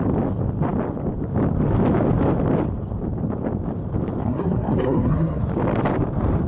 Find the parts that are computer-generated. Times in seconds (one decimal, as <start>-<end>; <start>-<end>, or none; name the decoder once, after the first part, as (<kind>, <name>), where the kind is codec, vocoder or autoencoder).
4.2-5.4 (codec, SNAC)